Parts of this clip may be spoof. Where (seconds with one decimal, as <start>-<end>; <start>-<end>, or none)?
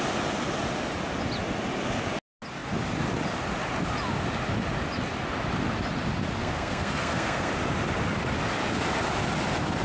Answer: 6.4-7.5